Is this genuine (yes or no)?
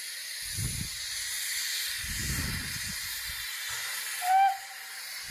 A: yes